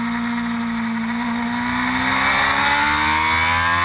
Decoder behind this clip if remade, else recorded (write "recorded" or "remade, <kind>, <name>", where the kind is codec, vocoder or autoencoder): recorded